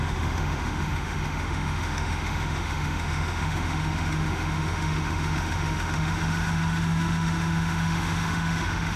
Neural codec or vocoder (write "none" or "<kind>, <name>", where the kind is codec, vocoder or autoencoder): autoencoder, DAC-VAE